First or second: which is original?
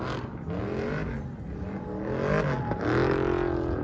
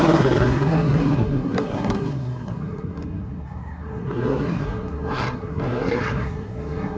first